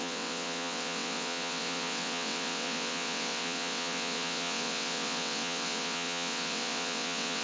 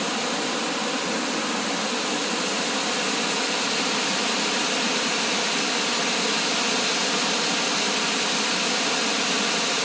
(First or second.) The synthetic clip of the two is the first